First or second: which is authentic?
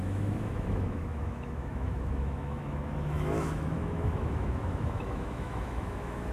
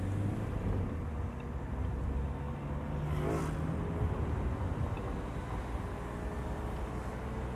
second